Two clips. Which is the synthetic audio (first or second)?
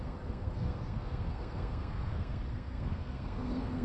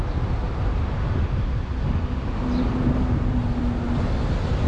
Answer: first